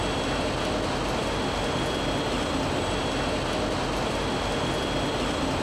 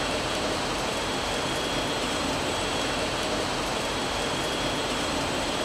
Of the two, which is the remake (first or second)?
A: second